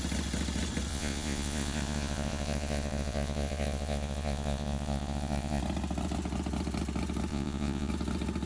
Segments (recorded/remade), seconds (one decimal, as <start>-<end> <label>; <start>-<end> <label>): 0.0-0.9 recorded; 0.9-5.6 remade; 5.6-7.3 recorded; 7.3-7.9 remade; 7.9-8.5 recorded